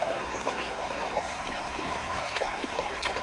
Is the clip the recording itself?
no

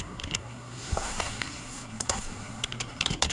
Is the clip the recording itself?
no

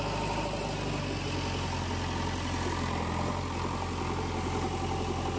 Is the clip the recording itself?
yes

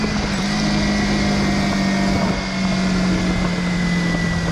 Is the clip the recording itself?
yes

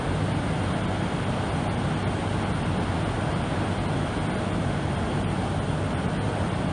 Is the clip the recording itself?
yes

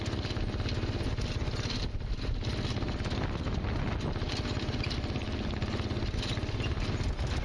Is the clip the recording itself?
yes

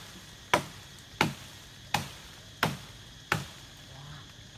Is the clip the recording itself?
yes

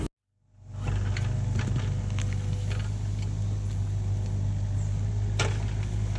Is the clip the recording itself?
yes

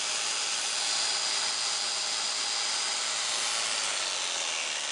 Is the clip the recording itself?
yes